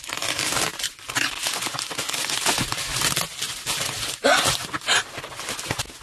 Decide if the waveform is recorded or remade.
recorded